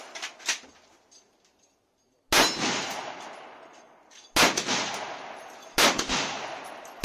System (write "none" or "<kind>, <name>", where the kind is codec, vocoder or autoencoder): none